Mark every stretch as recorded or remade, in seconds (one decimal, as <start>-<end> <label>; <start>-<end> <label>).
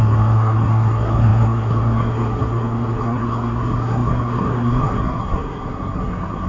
0.0-6.5 remade